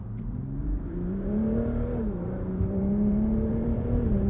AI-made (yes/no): yes